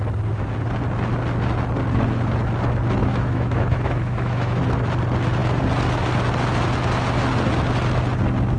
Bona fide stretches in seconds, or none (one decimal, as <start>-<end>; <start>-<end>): 0.0-3.0; 4.6-8.6